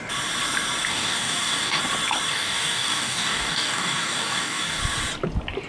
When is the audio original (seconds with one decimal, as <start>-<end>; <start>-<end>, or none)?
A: 0.0-0.9; 1.8-2.3; 4.8-5.7